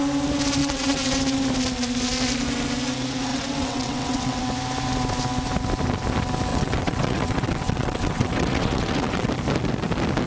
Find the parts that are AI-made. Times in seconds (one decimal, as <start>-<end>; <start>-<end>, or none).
0.6-1.2; 3.3-4.4; 6.5-9.3